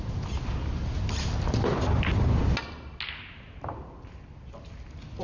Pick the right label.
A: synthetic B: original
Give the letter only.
B